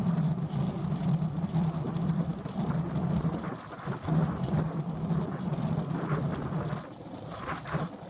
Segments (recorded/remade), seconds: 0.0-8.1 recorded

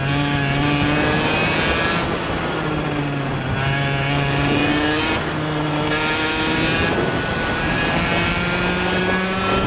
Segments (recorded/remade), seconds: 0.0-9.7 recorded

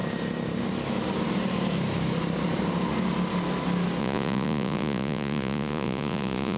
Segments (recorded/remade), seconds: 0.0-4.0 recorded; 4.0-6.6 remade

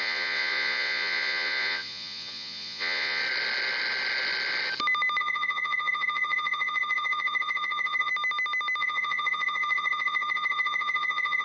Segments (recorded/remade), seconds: 0.0-3.2 remade; 3.2-5.2 recorded; 5.2-8.1 remade; 8.1-8.8 recorded; 8.8-11.4 remade